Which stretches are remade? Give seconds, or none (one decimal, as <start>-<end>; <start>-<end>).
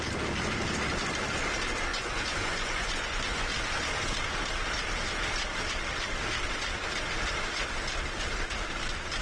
1.9-3.5